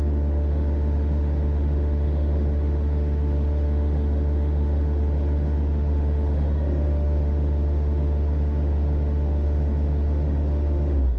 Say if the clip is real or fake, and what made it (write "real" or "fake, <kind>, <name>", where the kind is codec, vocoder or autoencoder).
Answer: fake, autoencoder, DAC-VAE